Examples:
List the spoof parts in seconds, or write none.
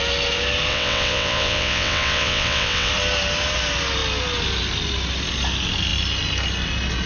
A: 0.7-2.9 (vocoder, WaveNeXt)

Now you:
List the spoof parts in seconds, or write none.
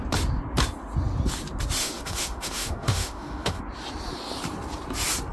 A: 1.8-3.6 (autoencoder, DAC-VAE)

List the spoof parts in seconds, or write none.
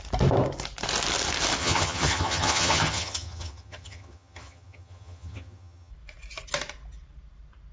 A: 1.6-5.9 (vocoder, HiFi-GAN)